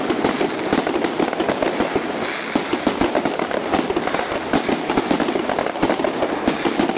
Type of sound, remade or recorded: recorded